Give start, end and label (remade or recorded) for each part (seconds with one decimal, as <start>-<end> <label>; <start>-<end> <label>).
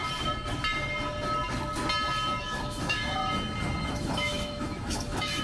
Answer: 0.0-2.4 recorded; 2.4-3.2 remade; 3.2-3.9 recorded; 3.9-5.4 remade